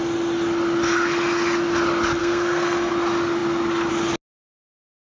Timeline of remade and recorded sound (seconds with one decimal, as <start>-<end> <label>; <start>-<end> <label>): 0.0-2.2 recorded; 2.2-2.9 remade; 2.9-5.0 recorded